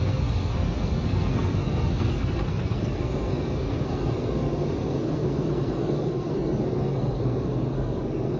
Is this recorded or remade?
remade